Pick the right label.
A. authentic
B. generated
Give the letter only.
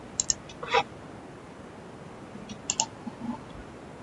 A